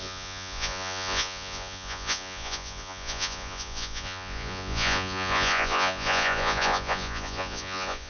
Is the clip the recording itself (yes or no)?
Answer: no